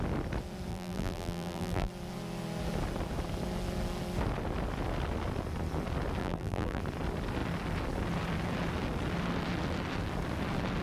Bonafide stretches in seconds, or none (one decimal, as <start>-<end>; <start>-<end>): 0.0-0.7; 1.9-6.2; 6.8-10.8